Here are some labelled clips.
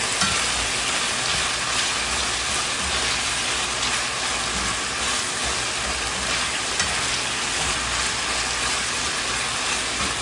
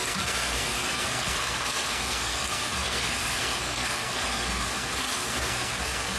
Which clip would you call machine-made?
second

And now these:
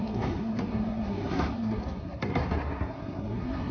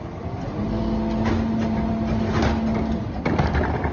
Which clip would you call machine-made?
first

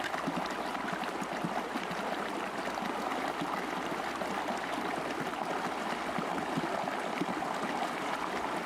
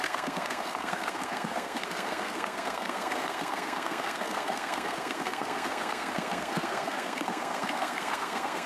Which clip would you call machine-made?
second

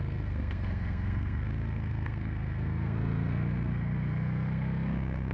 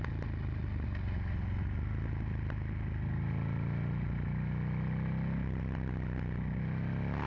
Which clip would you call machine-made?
first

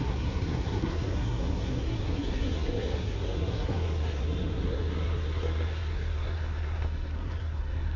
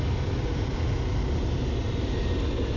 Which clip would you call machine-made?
first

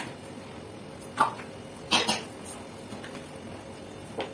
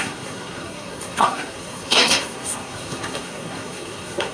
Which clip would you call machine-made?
second